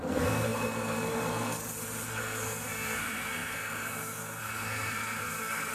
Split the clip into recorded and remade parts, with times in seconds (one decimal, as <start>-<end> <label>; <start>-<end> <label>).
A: 0.0-1.6 remade; 1.6-2.1 recorded; 2.1-5.7 remade